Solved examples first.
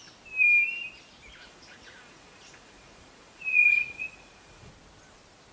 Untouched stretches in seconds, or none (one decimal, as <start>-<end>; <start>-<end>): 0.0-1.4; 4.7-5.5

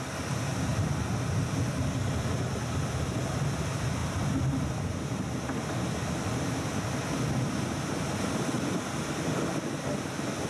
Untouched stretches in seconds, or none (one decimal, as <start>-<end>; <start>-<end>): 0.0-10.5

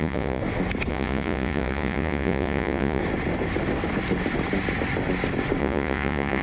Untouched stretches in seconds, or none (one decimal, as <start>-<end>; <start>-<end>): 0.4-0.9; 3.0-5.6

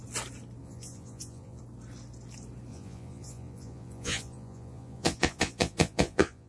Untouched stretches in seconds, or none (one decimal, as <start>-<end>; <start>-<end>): 0.0-0.6; 1.6-2.7

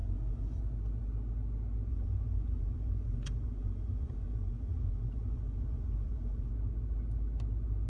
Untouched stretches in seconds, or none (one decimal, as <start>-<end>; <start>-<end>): 0.6-1.9; 6.5-7.9